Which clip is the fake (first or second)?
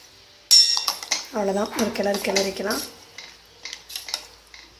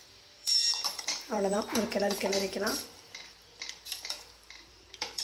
second